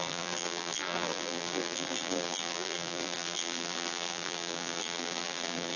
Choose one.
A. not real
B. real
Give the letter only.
A